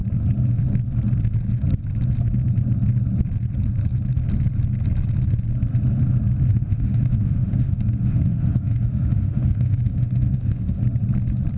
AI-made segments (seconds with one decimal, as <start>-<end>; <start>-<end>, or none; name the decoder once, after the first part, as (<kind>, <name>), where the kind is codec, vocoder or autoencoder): 6.5-10.8 (autoencoder, DAC-VAE)